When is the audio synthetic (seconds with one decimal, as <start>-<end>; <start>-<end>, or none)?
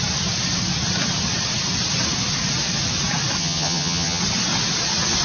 3.4-4.2